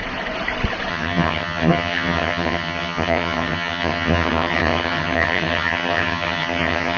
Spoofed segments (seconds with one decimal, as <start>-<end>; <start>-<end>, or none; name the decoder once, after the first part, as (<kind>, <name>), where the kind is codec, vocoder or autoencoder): 0.9-7.0 (vocoder, HiFi-GAN)